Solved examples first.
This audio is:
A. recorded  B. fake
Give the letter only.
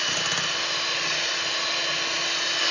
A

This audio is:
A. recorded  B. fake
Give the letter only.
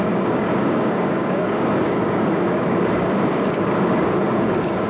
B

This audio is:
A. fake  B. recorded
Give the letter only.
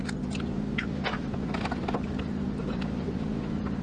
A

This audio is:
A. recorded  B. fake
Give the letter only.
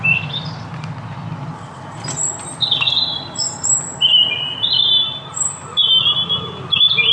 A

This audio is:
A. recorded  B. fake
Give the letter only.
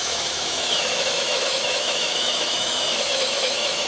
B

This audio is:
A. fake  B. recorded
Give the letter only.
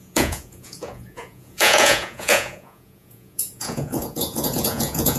A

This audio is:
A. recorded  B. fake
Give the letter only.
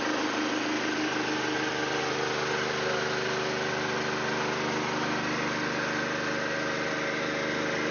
A